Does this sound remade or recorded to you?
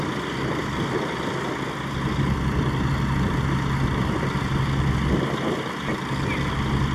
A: recorded